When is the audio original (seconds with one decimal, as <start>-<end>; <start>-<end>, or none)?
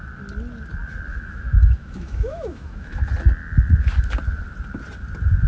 0.0-1.1; 3.1-5.5